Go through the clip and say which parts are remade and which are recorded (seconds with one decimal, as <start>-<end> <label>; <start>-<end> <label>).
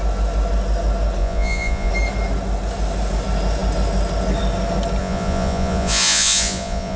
0.0-1.2 recorded; 1.2-1.9 remade; 1.9-5.0 recorded; 5.0-7.0 remade